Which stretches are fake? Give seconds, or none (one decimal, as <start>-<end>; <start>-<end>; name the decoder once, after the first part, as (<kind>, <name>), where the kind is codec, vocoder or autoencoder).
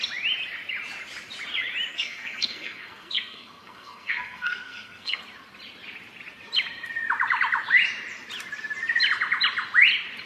1.9-5.2 (codec, SNAC)